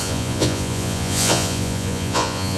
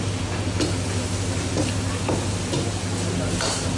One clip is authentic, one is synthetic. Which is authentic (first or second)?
second